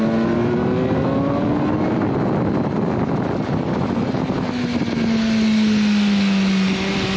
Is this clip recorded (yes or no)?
yes